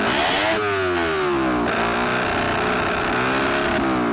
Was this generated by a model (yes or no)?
no